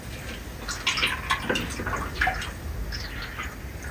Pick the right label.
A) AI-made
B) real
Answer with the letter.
B